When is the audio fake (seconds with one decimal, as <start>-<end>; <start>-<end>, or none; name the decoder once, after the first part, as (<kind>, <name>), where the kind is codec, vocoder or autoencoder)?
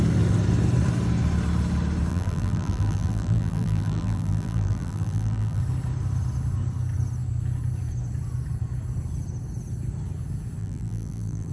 2.1-5.6 (vocoder, BigVGAN v2); 10.6-11.5